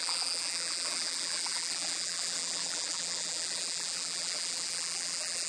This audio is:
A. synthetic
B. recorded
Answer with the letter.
A